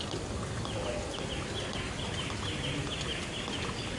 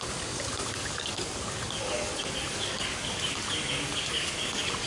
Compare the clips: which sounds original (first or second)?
first